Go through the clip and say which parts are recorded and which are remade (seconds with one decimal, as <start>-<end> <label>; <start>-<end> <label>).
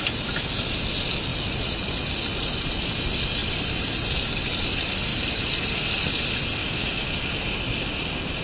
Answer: 0.0-6.6 recorded; 6.6-7.1 remade; 7.1-8.4 recorded